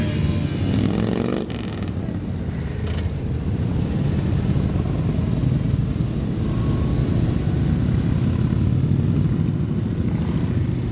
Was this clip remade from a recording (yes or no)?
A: no